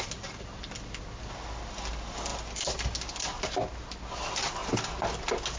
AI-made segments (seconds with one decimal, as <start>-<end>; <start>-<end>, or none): none